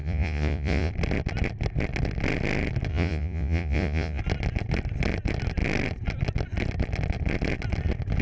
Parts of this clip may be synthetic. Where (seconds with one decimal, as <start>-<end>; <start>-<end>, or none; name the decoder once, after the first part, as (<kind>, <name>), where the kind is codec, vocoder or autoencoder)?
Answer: 0.0-0.9 (vocoder, Vocos); 2.9-4.2